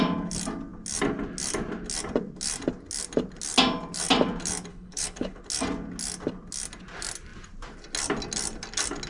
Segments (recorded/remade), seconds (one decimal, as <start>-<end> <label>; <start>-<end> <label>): 0.0-4.7 recorded; 4.7-5.4 remade; 5.4-9.1 recorded